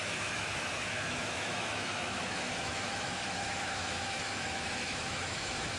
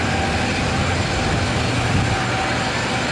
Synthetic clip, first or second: first